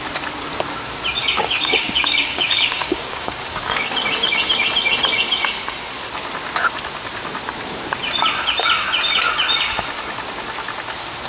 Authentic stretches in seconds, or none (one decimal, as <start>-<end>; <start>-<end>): 0.0-1.2; 3.9-11.3